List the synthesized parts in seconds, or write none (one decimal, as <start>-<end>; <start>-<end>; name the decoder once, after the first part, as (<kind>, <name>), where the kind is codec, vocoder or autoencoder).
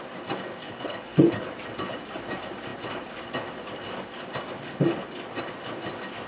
0.6-1.5 (codec, HILCodec)